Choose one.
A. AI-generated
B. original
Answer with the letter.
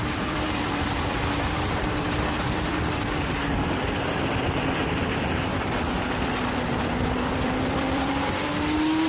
A